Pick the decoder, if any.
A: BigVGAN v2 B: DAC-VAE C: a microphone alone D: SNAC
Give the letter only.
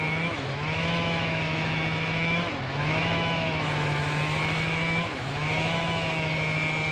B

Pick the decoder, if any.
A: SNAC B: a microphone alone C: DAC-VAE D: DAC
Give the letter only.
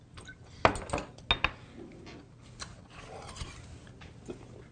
B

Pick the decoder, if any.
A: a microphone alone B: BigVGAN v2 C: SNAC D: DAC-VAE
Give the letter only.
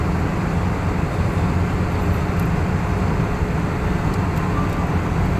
A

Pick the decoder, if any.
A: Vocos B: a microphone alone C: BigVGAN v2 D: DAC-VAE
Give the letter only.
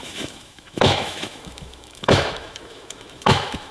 D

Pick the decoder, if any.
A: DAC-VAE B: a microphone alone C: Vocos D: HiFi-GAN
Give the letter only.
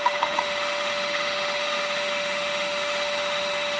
A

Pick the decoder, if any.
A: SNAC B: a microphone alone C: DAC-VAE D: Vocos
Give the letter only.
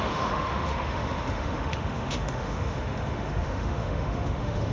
C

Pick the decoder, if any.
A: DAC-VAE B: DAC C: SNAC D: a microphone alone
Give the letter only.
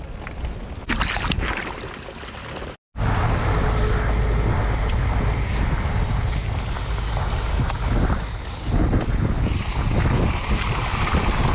D